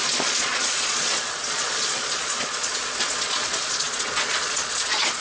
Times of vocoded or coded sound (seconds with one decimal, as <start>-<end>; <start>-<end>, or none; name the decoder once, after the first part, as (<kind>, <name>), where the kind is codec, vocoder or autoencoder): 0.0-5.2 (vocoder, Vocos)